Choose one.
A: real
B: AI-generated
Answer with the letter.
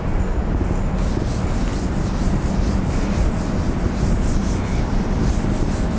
A